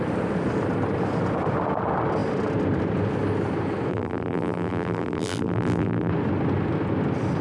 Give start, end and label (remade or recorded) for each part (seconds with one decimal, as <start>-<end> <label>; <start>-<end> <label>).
0.0-3.9 recorded; 3.9-6.1 remade; 6.1-7.4 recorded